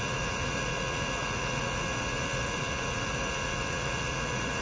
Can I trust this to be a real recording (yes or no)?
no